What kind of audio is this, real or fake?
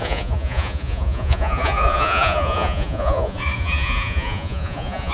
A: fake